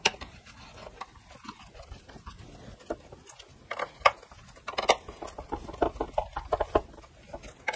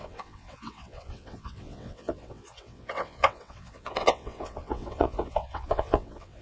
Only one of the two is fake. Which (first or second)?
second